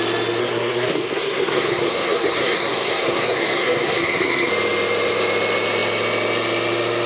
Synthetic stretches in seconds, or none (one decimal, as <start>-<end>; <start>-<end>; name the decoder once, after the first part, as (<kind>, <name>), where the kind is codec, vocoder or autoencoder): 0.4-4.5 (codec, SNAC)